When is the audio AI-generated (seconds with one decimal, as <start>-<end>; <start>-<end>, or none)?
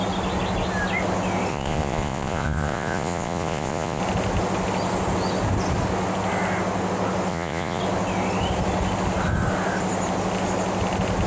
1.5-4.0; 7.3-7.8